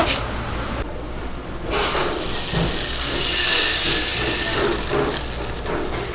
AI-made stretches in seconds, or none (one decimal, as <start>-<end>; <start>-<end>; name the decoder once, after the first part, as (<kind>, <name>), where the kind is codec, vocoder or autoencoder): none